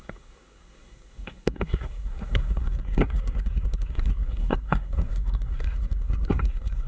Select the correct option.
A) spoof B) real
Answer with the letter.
A